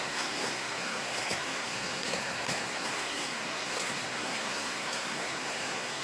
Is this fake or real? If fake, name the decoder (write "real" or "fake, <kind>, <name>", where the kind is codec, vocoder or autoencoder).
fake, codec, SNAC